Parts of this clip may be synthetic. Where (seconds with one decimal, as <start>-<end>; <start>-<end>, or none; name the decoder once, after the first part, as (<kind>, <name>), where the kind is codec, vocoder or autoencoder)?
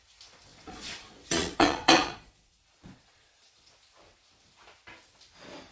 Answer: 0.5-3.7 (vocoder, Vocos)